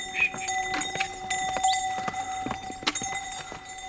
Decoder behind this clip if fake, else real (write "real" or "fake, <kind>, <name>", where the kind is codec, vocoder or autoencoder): real